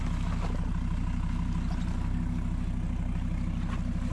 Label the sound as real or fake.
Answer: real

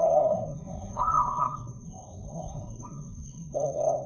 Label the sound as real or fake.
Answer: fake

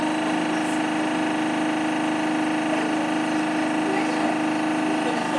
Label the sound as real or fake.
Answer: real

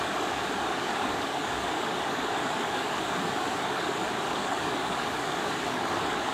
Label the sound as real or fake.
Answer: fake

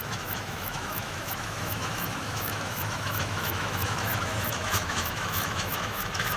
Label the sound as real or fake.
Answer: fake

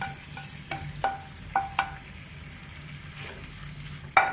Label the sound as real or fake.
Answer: real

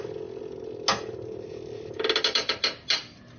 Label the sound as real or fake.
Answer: real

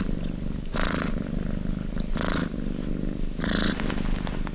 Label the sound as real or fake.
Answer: real